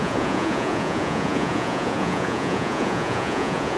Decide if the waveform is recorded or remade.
remade